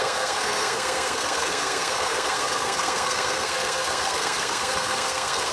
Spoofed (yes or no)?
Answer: yes